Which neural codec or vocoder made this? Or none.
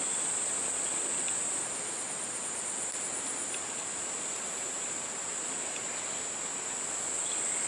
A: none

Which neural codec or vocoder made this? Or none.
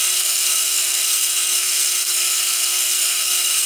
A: codec, SNAC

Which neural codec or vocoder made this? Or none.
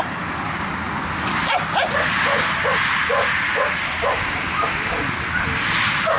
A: none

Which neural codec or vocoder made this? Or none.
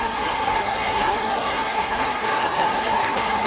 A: codec, SNAC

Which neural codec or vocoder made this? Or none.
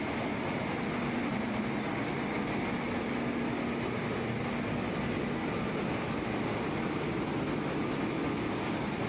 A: none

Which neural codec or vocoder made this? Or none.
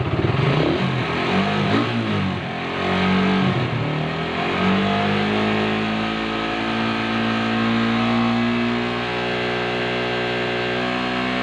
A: none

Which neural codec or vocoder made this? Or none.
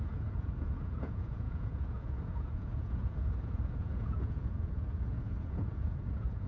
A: vocoder, Vocos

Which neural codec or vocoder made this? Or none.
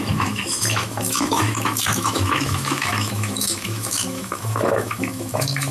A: autoencoder, DAC-VAE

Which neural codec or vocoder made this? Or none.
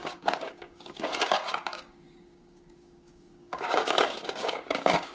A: codec, DAC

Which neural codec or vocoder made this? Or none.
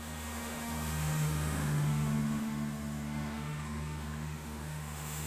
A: autoencoder, DAC-VAE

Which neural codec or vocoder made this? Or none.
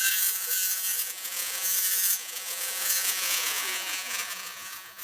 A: vocoder, Vocos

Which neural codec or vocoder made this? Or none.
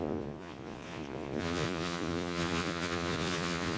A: vocoder, Vocos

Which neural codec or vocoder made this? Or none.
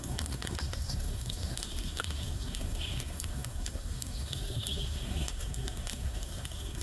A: codec, SNAC